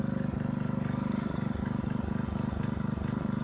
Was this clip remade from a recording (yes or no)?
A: no